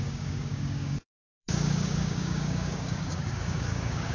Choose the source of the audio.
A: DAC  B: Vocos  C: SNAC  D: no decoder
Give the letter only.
A